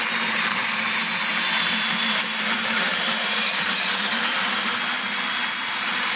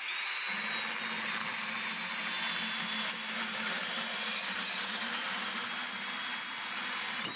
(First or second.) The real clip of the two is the second